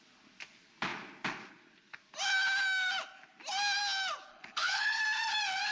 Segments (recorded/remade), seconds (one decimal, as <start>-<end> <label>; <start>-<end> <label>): 0.0-4.3 recorded; 4.3-5.0 remade; 5.0-5.7 recorded

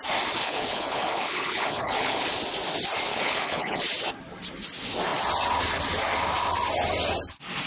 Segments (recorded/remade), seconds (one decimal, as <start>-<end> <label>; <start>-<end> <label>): 0.0-0.4 recorded; 0.4-2.4 remade; 2.4-3.1 recorded; 3.1-3.8 remade; 3.8-7.7 recorded

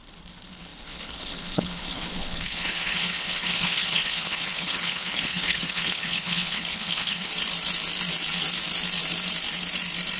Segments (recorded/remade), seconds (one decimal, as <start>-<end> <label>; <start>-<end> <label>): 0.0-7.3 remade; 7.3-10.2 recorded